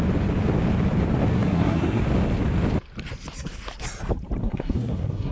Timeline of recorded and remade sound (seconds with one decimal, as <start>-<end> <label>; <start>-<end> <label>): 0.0-1.3 recorded; 1.3-2.0 remade; 2.0-4.4 recorded; 4.4-5.3 remade